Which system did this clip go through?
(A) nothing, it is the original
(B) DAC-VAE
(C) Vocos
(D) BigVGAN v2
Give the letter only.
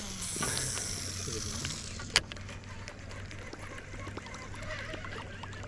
A